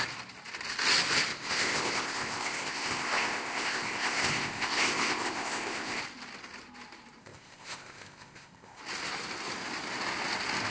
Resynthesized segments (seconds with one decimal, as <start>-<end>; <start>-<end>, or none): 1.3-6.0; 7.2-8.8